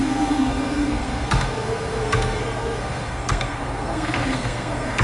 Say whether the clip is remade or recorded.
remade